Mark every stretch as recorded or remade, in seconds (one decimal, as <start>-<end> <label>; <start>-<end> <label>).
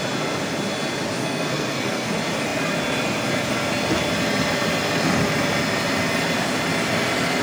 0.0-1.2 recorded; 1.2-2.1 remade; 2.1-7.4 recorded